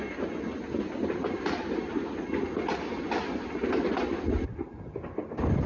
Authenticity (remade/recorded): recorded